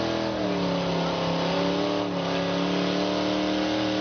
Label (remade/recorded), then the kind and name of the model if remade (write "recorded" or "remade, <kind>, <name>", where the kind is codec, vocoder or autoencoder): recorded